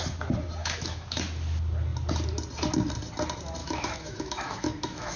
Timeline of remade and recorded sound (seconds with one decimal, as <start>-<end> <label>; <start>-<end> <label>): 0.0-0.6 recorded; 0.6-1.2 remade; 1.2-3.6 recorded; 3.6-5.2 remade